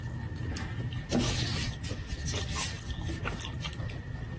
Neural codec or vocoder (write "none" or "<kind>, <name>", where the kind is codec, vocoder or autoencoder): none